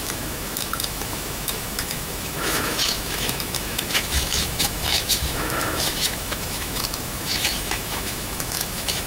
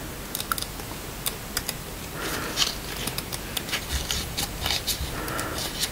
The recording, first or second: second